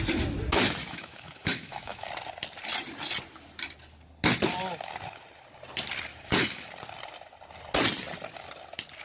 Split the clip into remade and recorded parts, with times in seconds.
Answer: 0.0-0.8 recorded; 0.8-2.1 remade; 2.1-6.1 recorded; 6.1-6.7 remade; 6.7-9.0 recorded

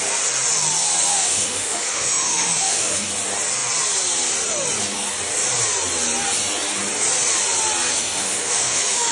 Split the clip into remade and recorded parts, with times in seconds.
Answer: 0.0-1.1 recorded; 1.1-3.1 remade; 3.1-7.9 recorded; 7.9-9.1 remade